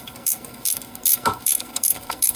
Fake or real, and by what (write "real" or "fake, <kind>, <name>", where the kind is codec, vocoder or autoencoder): fake, codec, SNAC